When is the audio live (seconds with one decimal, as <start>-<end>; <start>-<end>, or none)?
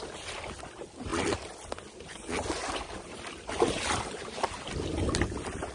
0.0-5.7